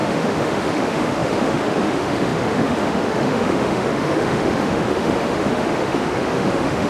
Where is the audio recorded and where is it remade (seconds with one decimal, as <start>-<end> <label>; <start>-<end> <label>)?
0.0-6.9 remade